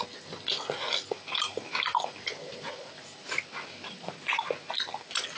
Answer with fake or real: real